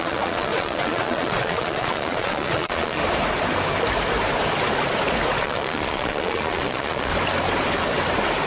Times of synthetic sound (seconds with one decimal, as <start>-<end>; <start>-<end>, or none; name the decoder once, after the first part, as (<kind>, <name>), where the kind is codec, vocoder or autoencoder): 0.0-3.0 (vocoder, Vocos); 5.4-7.1